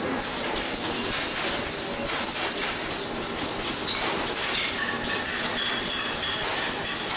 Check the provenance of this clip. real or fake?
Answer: real